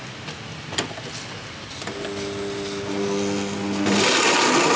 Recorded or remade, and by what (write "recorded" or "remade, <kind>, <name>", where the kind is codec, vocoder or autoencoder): recorded